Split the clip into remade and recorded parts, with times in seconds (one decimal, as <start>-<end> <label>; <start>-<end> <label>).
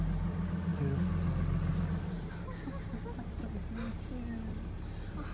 0.0-5.3 recorded